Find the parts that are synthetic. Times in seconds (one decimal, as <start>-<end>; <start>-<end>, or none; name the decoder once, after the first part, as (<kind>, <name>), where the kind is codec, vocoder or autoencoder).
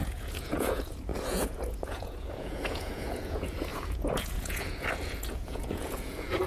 0.0-6.5 (vocoder, Vocos)